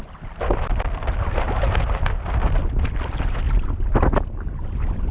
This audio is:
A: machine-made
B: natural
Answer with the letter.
B